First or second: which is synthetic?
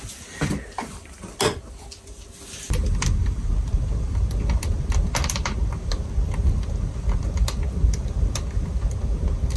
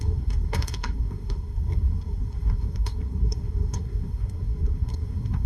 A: second